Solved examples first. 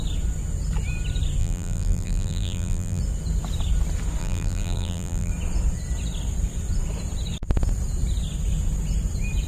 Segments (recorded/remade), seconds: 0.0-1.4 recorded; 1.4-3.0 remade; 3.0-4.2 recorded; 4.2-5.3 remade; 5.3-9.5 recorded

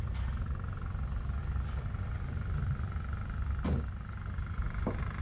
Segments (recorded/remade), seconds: 0.0-5.2 recorded

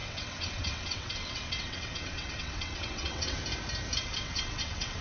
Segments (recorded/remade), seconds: 0.0-3.4 remade; 3.4-4.0 recorded; 4.0-5.0 remade

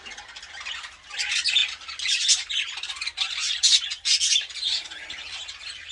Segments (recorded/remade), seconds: 0.0-5.9 recorded